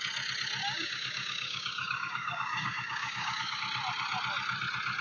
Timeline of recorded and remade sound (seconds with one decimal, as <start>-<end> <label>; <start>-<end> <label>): 0.0-0.6 recorded; 0.6-3.6 remade; 3.6-5.0 recorded